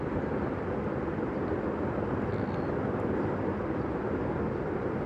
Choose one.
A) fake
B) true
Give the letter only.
B